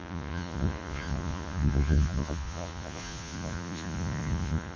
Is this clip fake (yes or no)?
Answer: yes